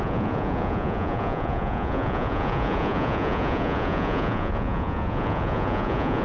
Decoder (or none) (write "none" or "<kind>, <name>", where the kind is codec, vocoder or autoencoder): vocoder, Vocos